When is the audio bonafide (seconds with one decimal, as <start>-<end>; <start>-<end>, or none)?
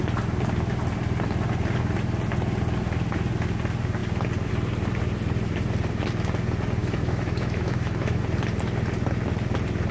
0.0-6.8; 8.2-9.9